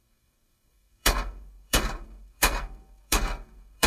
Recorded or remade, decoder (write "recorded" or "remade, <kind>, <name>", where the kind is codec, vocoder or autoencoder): remade, codec, SNAC